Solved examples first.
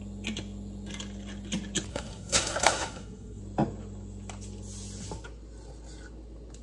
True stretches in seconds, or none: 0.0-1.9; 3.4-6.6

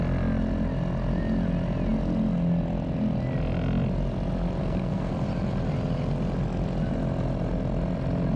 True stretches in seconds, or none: 0.0-4.6; 5.1-8.4

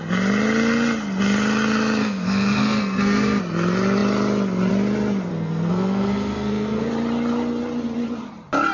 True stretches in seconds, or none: 0.0-2.0; 3.4-5.3; 6.9-8.7

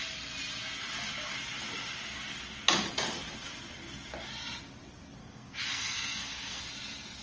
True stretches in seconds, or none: 0.0-5.2; 6.6-7.2

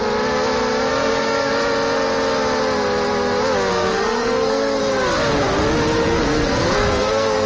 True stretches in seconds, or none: 0.0-0.9; 1.5-3.7; 4.8-6.0

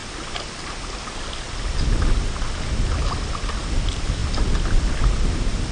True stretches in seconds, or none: 0.0-5.7

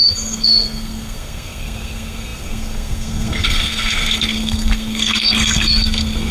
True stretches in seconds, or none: none